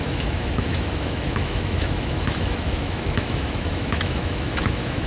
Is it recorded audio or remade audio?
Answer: remade